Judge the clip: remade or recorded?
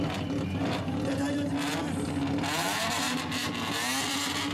recorded